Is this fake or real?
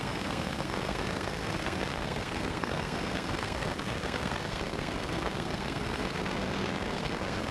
fake